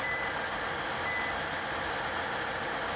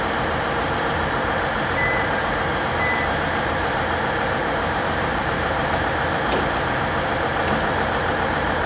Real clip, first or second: first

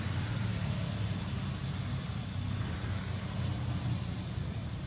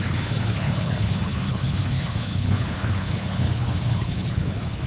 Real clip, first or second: first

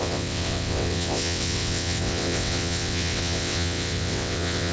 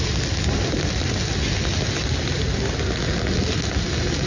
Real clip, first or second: second